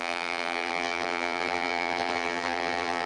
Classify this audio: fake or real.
fake